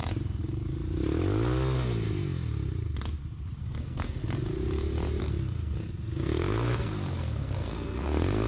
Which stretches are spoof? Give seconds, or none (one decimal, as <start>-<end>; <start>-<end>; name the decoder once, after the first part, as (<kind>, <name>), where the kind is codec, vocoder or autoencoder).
3.6-4.2 (codec, SNAC); 5.2-8.5